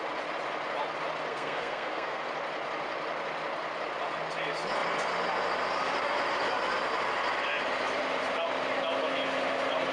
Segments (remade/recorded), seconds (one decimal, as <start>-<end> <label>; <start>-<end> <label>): 0.0-1.3 recorded; 1.3-2.2 remade; 2.2-9.9 recorded